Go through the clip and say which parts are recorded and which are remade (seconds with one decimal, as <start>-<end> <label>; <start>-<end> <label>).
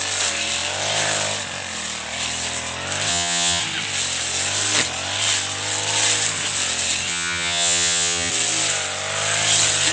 0.0-3.1 recorded; 3.1-3.6 remade; 3.6-7.1 recorded; 7.1-8.3 remade; 8.3-9.9 recorded